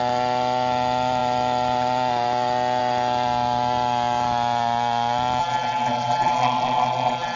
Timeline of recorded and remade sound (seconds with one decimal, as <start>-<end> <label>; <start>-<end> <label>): 0.0-5.4 recorded; 5.4-7.4 remade

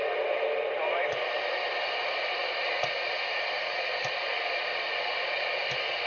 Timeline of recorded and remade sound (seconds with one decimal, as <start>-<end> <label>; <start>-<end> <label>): 0.0-6.1 recorded

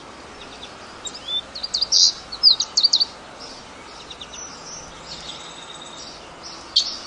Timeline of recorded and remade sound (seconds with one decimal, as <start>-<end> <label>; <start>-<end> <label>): 0.0-7.1 recorded

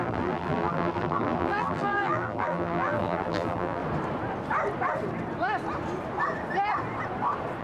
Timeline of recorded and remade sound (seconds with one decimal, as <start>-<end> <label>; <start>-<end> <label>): 0.0-3.8 remade; 3.8-7.6 recorded

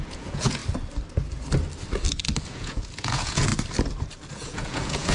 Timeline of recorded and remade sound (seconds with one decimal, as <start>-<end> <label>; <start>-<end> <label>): 0.0-0.6 remade; 0.6-2.4 recorded; 2.4-3.5 remade; 3.5-4.3 recorded; 4.3-5.1 remade

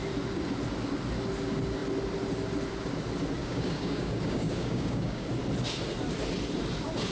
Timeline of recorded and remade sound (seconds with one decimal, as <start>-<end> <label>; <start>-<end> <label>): 0.0-3.4 recorded; 3.4-5.3 remade; 5.3-7.1 recorded